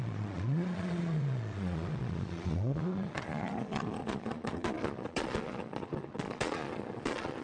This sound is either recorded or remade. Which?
remade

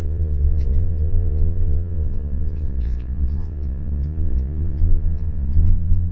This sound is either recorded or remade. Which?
remade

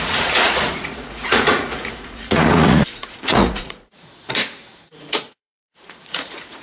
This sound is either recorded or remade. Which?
remade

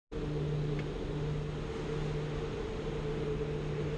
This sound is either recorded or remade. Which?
recorded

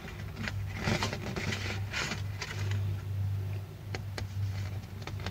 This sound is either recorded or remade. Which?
recorded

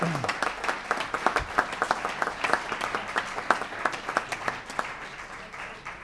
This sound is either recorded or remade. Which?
recorded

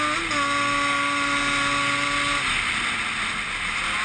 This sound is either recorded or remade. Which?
recorded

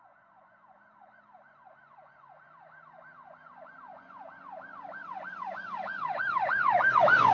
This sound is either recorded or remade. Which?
remade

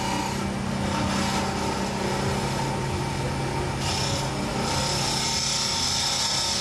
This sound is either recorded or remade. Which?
recorded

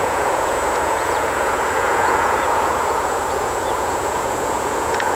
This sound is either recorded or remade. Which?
remade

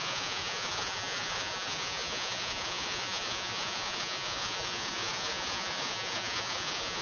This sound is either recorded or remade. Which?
remade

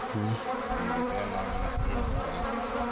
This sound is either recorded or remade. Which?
recorded